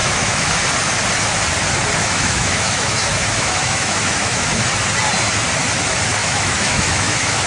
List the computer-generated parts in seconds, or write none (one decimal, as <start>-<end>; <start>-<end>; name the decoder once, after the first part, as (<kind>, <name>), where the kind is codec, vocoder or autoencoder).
0.0-0.5 (autoencoder, DAC-VAE); 2.0-4.6; 6.2-7.5